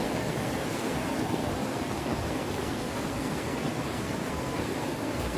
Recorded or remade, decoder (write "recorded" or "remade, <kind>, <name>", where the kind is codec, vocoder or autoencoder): remade, codec, SNAC